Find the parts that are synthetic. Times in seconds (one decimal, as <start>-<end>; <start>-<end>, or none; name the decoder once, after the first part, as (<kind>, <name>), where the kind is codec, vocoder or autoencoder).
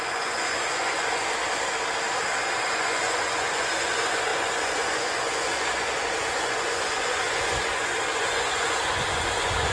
0.0-1.4 (vocoder, Vocos); 2.6-9.7